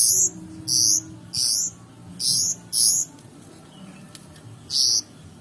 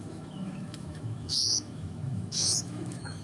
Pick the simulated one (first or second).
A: second